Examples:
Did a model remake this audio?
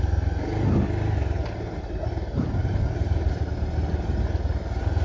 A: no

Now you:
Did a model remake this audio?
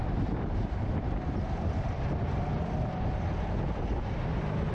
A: no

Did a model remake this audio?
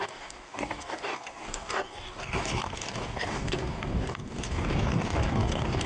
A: yes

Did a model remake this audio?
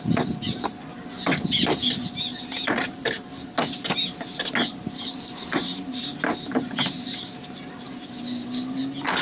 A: no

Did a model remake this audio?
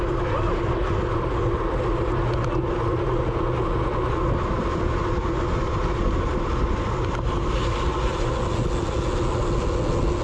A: no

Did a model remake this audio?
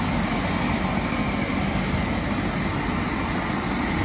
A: no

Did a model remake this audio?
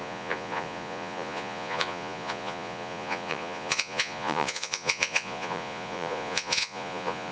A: yes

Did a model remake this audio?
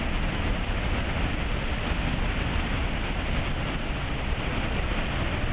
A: no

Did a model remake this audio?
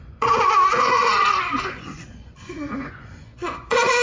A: yes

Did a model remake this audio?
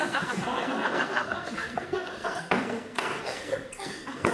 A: yes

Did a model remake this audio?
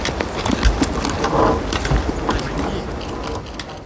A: no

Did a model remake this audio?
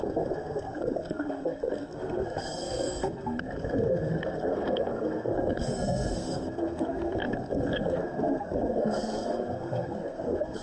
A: yes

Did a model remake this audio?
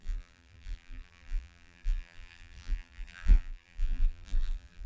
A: yes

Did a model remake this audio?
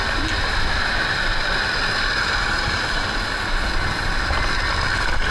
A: no